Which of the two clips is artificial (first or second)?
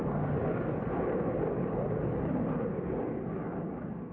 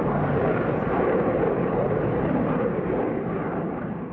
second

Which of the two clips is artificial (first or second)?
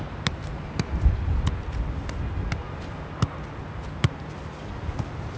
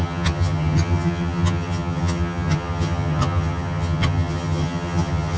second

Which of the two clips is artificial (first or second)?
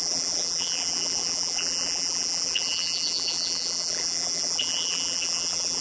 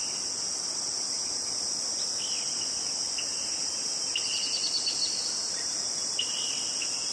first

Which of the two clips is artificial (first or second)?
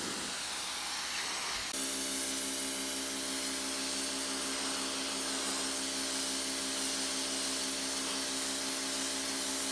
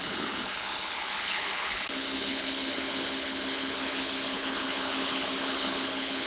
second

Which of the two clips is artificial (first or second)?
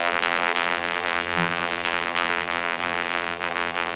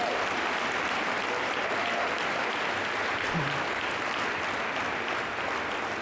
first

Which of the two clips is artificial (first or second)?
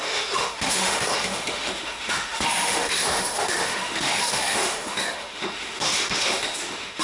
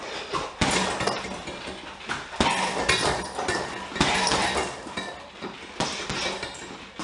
first